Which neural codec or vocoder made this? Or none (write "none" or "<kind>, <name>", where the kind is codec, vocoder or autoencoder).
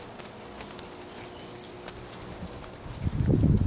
none